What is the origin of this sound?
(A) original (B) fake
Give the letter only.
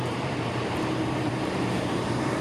B